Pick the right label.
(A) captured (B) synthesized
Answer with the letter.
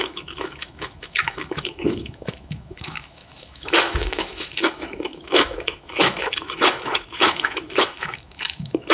B